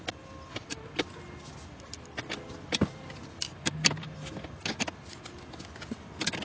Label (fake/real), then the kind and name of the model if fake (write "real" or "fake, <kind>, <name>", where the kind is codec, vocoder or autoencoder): real